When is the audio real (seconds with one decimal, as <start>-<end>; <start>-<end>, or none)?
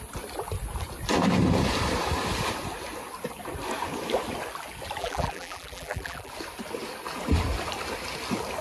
0.0-5.0; 6.3-8.6